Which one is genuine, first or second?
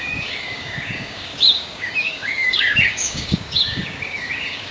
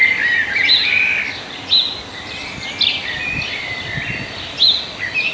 second